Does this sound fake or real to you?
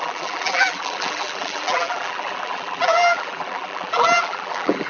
fake